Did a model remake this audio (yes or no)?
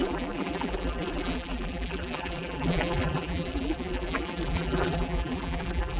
yes